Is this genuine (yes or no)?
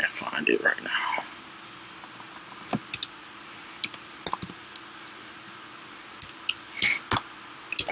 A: yes